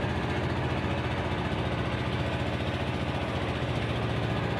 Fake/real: real